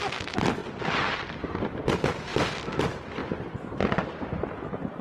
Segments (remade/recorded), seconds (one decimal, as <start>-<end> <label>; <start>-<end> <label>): 0.0-5.0 recorded